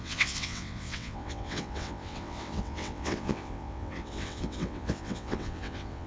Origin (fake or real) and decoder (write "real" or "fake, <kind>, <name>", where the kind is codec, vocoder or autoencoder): fake, vocoder, WaveNeXt